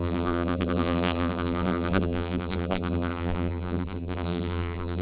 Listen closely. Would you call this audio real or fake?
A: fake